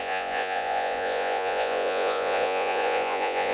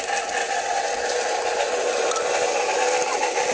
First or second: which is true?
second